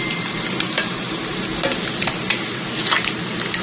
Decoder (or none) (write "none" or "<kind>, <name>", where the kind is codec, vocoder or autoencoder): none